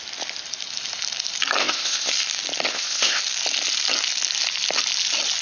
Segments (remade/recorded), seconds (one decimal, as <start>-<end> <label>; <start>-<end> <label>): 0.0-1.6 recorded; 1.6-2.1 remade; 2.1-2.7 recorded; 2.7-3.2 remade; 3.2-5.4 recorded